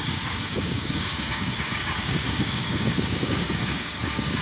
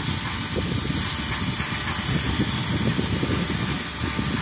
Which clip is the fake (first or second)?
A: first